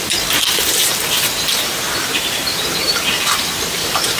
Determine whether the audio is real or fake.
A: fake